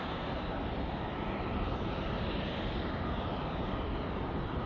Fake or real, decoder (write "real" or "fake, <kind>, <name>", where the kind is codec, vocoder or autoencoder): real